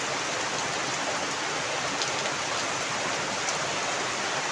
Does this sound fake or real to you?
real